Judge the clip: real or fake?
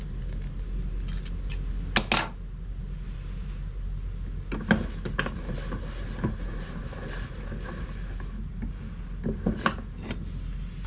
real